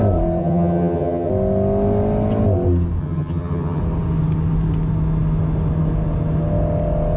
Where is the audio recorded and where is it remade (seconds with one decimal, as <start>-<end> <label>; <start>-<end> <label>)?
0.0-0.4 recorded; 0.4-1.3 remade; 1.3-3.0 recorded; 3.0-3.8 remade; 3.8-7.2 recorded